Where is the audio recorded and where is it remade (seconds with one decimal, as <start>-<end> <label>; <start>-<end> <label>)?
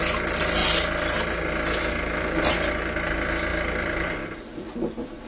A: 0.0-3.5 recorded; 3.5-5.3 remade